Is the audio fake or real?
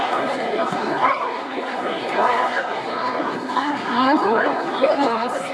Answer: fake